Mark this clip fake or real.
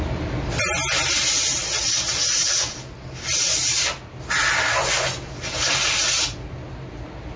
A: real